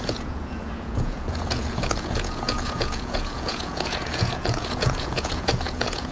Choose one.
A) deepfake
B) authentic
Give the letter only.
A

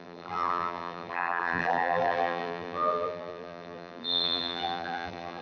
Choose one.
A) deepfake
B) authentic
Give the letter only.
A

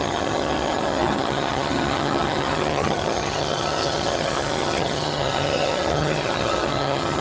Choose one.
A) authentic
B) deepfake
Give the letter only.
B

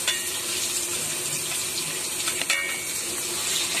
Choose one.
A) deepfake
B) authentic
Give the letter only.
B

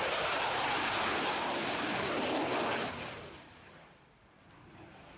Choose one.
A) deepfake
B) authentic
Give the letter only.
B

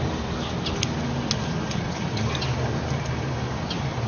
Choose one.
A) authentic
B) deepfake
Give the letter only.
A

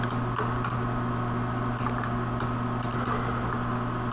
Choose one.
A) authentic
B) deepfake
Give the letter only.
A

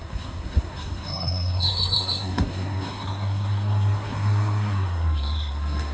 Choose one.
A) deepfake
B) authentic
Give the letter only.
A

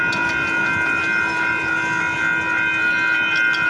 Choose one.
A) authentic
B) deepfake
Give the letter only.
A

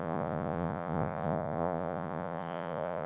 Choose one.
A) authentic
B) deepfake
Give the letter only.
B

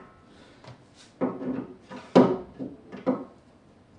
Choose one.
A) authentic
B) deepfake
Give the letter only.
A